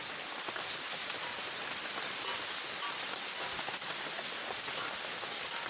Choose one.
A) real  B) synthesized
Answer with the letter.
A